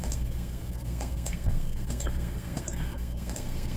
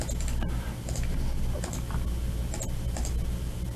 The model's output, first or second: first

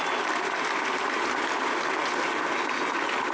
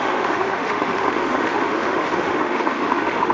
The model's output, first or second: second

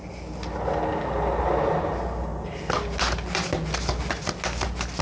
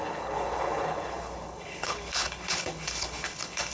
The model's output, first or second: second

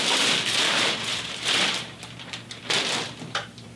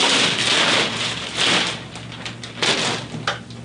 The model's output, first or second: first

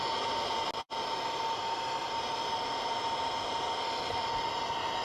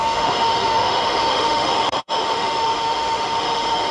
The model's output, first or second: second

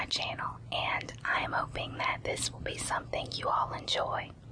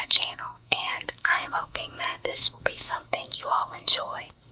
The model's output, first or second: second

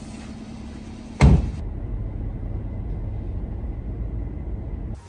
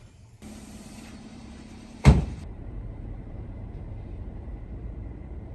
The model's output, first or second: second